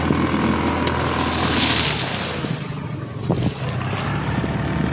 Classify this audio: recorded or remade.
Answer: recorded